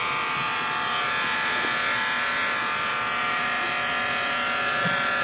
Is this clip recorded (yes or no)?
no